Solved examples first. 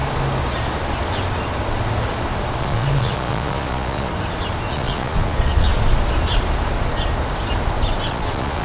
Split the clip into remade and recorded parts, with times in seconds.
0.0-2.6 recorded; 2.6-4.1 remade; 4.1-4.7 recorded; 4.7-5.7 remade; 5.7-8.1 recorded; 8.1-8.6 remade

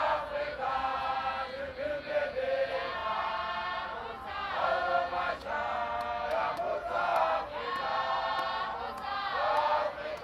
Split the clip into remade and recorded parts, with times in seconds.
0.0-3.0 remade; 3.0-4.3 recorded; 4.3-5.4 remade; 5.4-6.6 recorded; 6.6-7.1 remade; 7.1-8.8 recorded; 8.8-10.2 remade

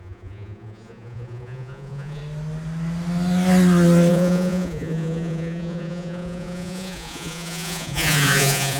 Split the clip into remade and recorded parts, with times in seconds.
0.0-2.2 remade; 2.2-4.1 recorded; 4.1-8.8 remade